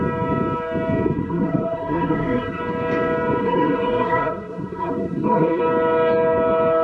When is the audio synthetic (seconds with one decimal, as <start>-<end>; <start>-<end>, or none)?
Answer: 1.2-2.6; 3.4-5.6